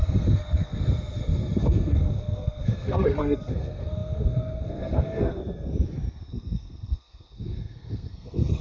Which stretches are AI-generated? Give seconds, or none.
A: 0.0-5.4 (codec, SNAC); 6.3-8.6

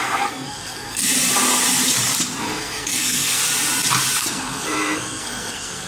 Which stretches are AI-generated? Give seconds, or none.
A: 0.0-1.1 (codec, SNAC); 2.4-3.4; 4.2-5.9

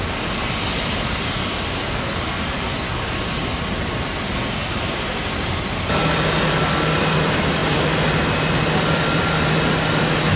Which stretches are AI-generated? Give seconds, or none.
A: none

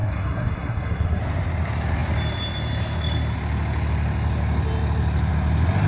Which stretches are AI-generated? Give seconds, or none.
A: 0.0-1.2 (codec, SNAC)

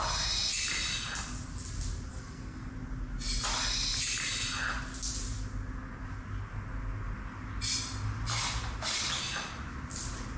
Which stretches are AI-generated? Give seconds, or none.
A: 2.1-2.7 (codec, SNAC)

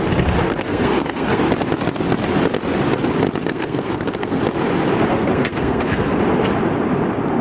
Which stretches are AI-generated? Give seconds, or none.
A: 0.4-1.4 (codec, SNAC); 3.4-4.4; 5.1-6.1